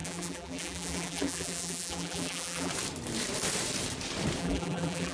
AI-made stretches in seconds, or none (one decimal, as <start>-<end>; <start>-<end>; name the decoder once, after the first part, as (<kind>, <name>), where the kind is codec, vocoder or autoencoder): 0.0-2.7 (vocoder, BigVGAN v2); 4.4-5.1